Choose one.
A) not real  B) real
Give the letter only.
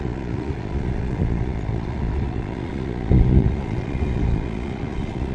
A